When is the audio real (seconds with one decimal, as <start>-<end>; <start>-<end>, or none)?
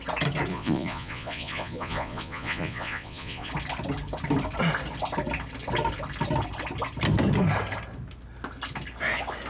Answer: 0.0-0.5; 3.5-9.5